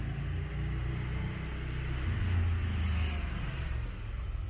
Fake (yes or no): no